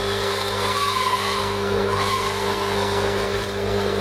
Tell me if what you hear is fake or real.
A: fake